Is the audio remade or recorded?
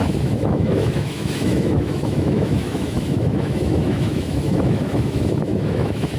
remade